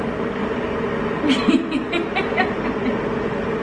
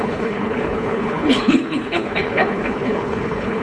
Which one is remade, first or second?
second